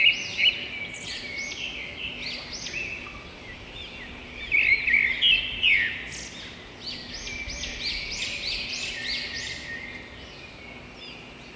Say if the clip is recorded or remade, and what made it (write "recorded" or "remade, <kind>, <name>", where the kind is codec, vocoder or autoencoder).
recorded